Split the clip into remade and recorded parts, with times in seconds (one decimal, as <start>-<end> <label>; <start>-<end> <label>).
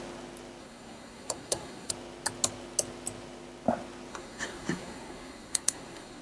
0.0-0.6 recorded; 0.6-1.9 remade; 1.9-4.1 recorded; 4.1-6.2 remade